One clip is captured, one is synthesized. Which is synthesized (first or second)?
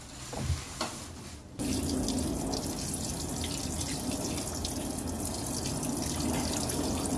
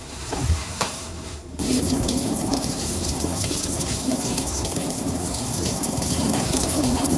second